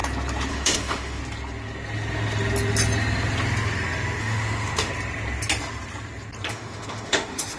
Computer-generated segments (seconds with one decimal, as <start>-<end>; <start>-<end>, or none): 0.5-1.2; 4.2-4.9; 6.5-7.6